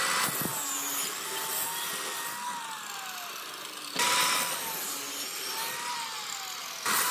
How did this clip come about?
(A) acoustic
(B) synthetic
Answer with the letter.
A